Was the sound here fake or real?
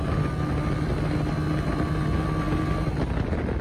real